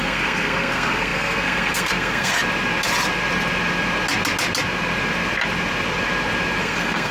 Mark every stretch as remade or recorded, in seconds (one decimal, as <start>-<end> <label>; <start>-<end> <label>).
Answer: 0.0-2.3 remade; 2.3-6.6 recorded; 6.6-7.1 remade